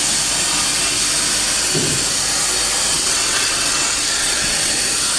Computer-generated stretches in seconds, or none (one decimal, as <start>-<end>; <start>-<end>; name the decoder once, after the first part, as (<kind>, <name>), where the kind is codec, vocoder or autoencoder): 2.9-4.7 (vocoder, WaveNeXt)